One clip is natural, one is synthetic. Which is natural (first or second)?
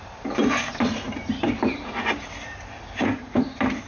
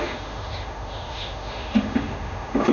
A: first